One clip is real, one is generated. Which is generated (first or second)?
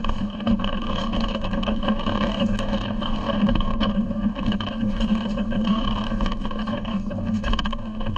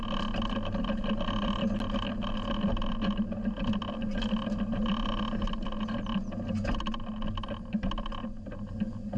first